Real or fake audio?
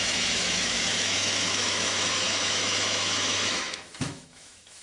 fake